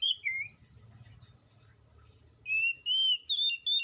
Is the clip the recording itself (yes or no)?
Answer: yes